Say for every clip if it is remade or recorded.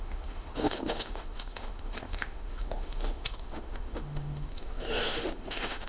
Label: remade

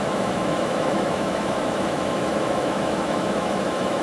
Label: remade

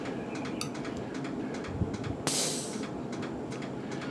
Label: recorded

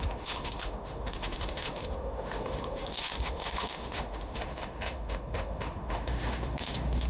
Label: remade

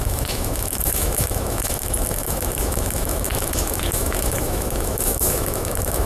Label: remade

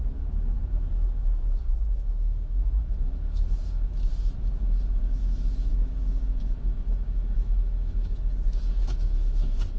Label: remade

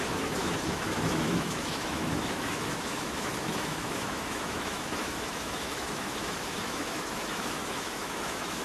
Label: remade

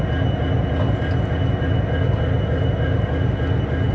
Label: recorded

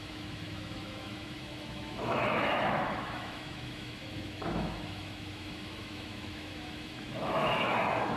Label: remade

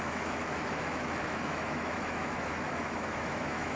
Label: remade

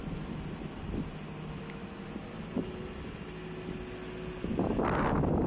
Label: recorded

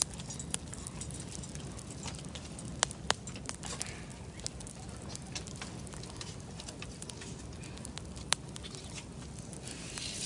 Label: recorded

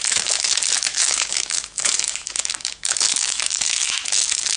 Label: remade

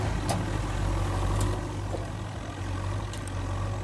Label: recorded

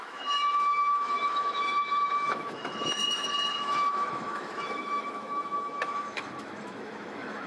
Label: remade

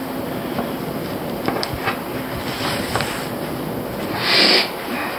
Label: recorded